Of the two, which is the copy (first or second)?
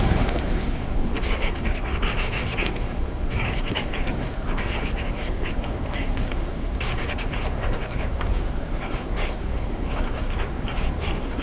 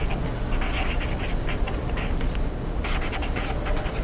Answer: first